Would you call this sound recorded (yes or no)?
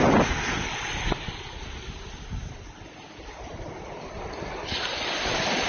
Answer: yes